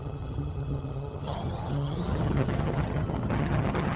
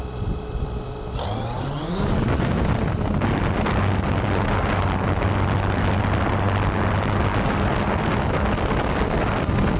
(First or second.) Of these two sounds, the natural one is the second